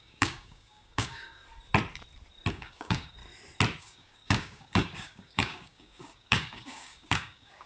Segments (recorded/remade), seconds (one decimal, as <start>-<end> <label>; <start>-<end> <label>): 0.0-1.4 remade; 1.4-2.5 recorded; 2.5-3.2 remade; 3.2-3.8 recorded; 3.8-7.7 remade